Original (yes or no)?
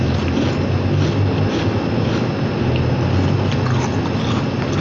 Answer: yes